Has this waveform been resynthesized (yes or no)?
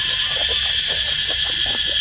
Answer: no